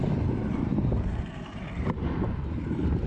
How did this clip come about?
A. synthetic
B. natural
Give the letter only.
B